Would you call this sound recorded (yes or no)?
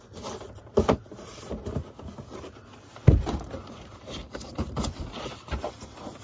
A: yes